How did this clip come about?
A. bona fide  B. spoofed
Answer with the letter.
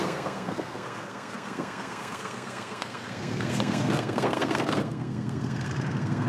B